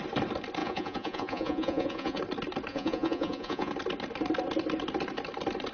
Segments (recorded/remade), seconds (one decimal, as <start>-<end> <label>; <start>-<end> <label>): 0.0-0.6 recorded; 0.6-2.2 remade; 2.2-2.7 recorded; 2.7-3.7 remade; 3.7-5.7 recorded